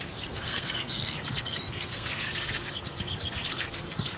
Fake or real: fake